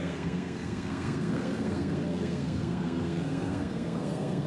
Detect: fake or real fake